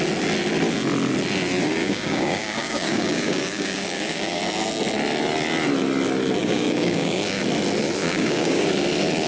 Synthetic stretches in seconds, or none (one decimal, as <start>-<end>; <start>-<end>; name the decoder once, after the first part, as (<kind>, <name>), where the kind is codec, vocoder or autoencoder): 1.8-4.4 (codec, DAC); 6.4-7.4; 8.0-8.7